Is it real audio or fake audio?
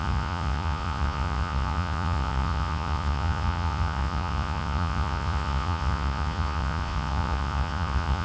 fake